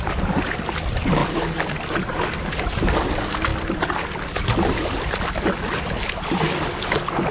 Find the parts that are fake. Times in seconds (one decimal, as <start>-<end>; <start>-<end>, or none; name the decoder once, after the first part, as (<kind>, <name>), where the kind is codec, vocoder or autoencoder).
none